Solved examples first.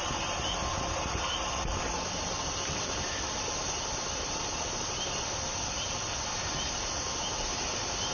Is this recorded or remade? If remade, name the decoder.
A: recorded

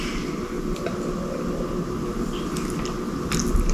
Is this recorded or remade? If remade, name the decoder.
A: recorded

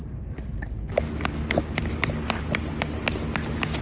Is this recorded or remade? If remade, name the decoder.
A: recorded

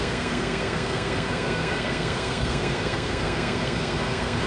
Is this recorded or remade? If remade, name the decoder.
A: remade, codec, SNAC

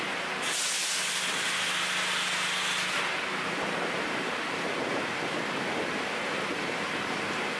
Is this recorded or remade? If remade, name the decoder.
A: recorded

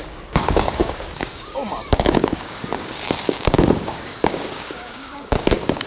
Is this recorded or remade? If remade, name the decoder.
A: remade, codec, DAC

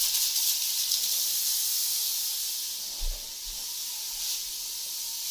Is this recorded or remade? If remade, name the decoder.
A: recorded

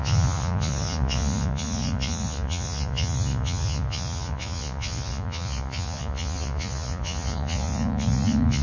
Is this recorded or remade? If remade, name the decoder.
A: remade, vocoder, Vocos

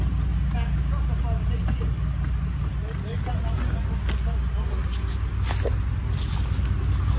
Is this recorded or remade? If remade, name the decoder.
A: recorded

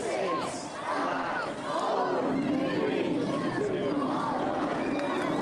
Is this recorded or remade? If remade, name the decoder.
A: recorded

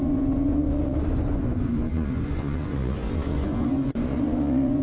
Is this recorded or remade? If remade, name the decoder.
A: remade, vocoder, Vocos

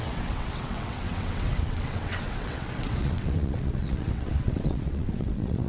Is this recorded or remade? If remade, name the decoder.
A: remade, vocoder, WaveNeXt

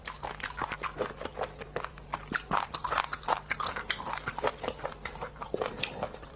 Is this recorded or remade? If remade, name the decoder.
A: remade, vocoder, BigVGAN v2